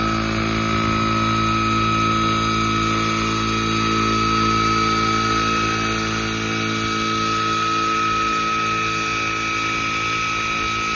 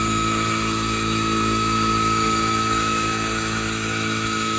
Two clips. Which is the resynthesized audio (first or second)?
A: second